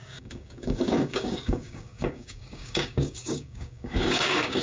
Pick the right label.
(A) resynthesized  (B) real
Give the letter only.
A